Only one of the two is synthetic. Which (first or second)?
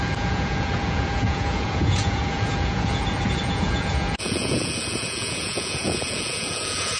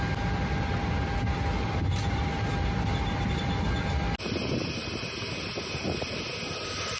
first